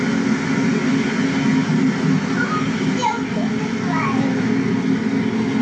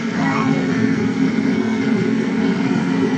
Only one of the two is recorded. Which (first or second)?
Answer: first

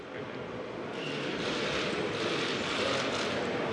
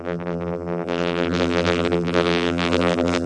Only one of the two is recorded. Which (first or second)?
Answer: first